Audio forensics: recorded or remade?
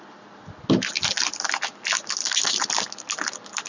recorded